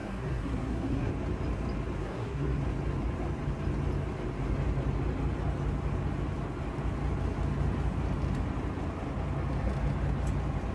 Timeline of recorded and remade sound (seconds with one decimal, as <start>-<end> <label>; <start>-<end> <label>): 0.0-1.1 remade; 1.1-2.0 recorded; 2.0-2.6 remade; 2.6-10.7 recorded